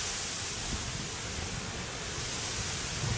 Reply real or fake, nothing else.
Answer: real